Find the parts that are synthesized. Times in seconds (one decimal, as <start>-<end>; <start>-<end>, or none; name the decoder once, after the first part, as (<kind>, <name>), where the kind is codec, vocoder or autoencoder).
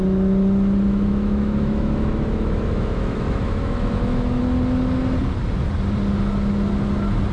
0.9-4.4 (autoencoder, DAC-VAE)